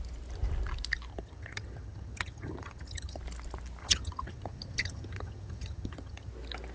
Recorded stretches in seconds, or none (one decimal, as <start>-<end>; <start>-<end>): 0.0-1.1; 3.2-3.8; 6.3-6.7

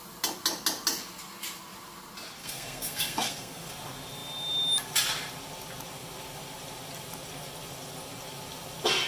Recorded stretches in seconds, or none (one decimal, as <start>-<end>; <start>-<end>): 0.0-2.4; 3.7-9.1

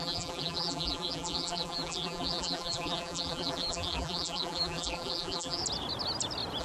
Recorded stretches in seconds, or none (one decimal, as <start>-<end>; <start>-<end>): 5.6-6.6